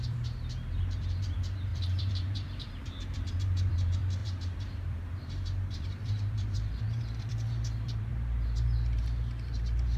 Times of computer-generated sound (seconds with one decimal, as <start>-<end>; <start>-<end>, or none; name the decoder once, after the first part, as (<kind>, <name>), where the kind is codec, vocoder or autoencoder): 0.0-10.0 (vocoder, BigVGAN v2)